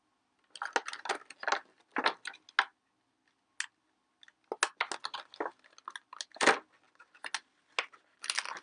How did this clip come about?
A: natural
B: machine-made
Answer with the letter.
A